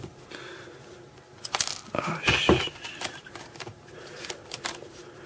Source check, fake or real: real